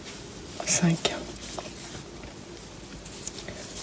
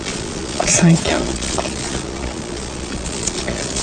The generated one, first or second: second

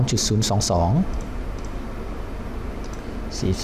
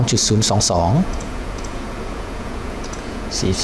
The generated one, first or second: second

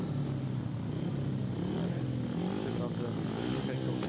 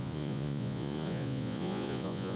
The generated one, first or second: second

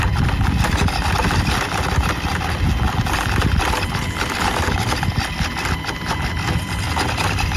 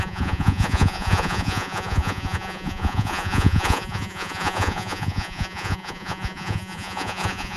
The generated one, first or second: second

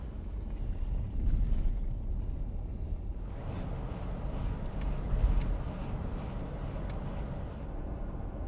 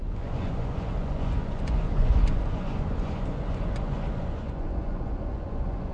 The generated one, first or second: second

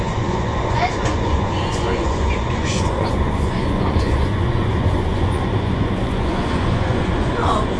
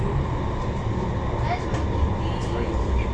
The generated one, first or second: first